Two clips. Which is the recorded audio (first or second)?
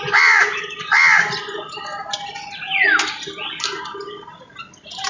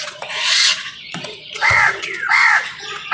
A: first